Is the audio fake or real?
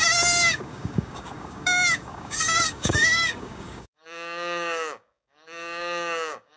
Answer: fake